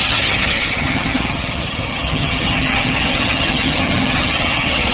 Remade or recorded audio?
remade